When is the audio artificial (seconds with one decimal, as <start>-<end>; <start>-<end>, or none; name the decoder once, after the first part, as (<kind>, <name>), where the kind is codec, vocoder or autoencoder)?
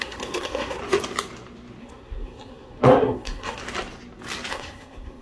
0.0-0.8 (codec, SNAC); 1.8-3.6; 4.5-5.2